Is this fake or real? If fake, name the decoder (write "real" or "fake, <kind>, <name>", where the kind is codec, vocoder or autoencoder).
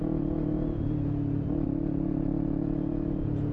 real